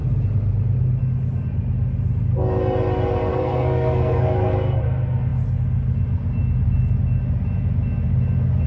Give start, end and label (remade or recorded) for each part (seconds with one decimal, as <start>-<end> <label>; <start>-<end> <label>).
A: 0.0-3.3 recorded; 3.3-4.8 remade; 4.8-8.7 recorded